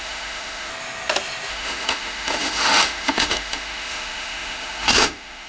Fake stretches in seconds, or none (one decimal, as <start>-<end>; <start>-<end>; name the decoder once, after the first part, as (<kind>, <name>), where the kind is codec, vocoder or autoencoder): 0.0-0.7 (autoencoder, DAC-VAE); 1.5-5.5